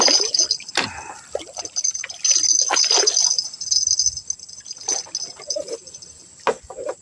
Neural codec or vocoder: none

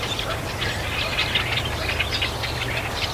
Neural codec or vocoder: none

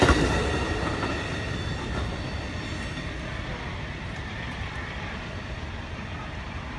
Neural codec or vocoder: none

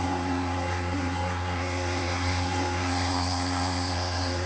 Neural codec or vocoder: codec, SNAC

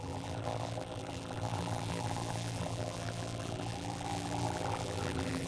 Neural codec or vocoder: vocoder, BigVGAN v2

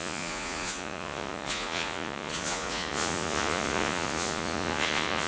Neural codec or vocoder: vocoder, Vocos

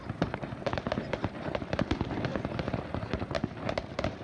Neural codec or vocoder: vocoder, BigVGAN v2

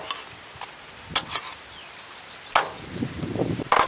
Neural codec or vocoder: none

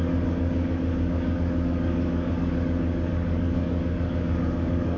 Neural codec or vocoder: codec, DAC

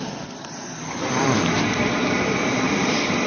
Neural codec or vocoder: vocoder, BigVGAN v2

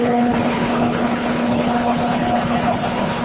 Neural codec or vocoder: codec, HILCodec